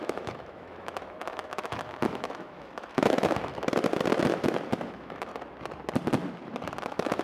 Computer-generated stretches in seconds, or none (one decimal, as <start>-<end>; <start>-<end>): 0.0-3.5; 4.7-5.3; 6.8-7.2